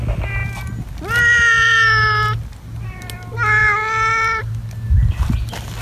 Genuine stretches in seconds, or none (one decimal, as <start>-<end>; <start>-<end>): 0.0-5.8